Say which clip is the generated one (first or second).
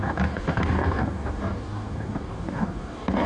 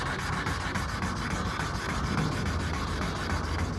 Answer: first